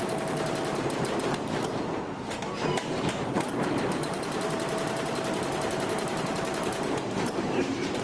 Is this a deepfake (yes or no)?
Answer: yes